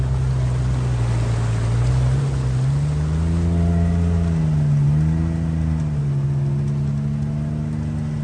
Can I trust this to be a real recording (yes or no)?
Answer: yes